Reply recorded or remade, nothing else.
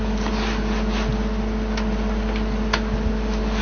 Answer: recorded